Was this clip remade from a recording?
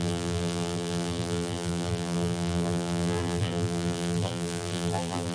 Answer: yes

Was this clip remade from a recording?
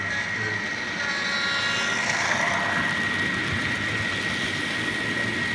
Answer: no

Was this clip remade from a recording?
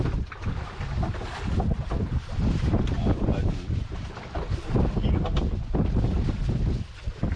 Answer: yes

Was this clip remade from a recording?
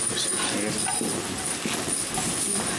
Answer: no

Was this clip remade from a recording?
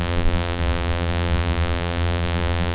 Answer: yes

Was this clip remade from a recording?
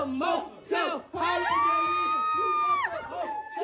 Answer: no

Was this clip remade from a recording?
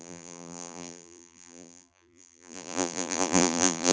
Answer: yes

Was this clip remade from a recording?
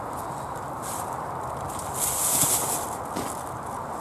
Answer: yes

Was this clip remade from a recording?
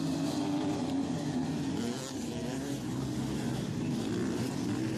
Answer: no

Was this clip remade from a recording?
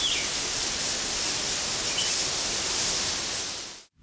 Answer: no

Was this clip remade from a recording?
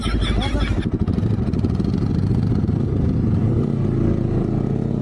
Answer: no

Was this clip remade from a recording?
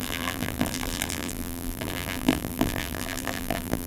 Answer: yes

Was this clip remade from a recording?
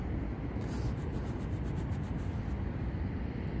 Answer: no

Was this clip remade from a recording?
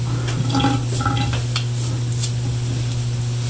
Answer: no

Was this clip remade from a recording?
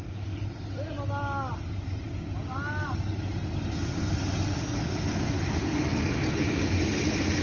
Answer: no